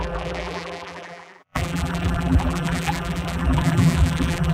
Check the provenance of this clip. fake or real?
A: fake